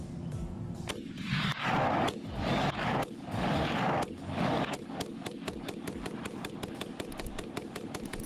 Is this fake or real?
fake